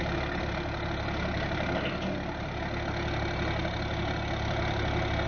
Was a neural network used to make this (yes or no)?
no